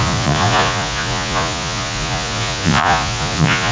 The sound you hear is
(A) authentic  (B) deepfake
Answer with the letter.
B